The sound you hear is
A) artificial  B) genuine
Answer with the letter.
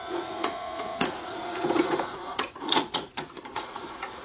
A